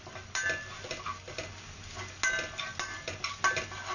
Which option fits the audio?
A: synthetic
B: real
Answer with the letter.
B